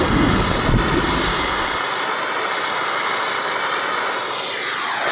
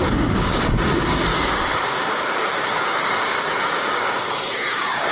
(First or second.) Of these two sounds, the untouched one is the first